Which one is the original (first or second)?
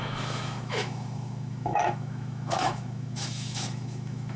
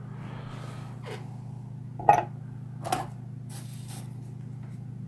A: second